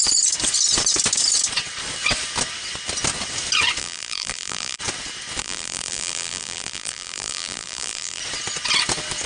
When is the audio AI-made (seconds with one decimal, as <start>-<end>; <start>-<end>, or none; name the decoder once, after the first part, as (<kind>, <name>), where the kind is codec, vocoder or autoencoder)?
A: 3.8-4.8 (vocoder, BigVGAN v2); 5.4-8.2